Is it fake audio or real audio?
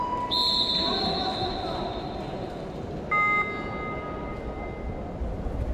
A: real